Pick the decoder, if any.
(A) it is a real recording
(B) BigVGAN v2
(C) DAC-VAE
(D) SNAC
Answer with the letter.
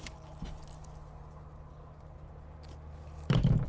A